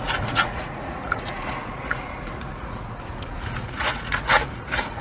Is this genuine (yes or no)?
no